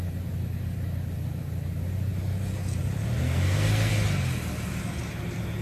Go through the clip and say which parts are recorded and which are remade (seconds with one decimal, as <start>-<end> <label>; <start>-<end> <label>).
0.0-3.2 recorded; 3.2-3.9 remade; 3.9-5.6 recorded